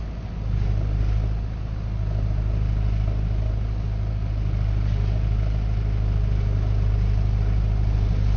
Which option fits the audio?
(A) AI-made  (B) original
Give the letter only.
B